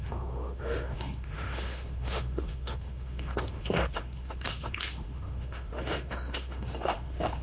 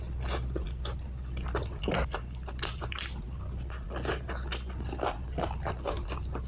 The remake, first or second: first